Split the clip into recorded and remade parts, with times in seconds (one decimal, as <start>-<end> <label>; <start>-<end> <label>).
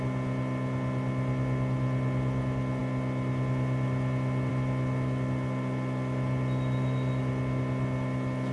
0.0-8.5 recorded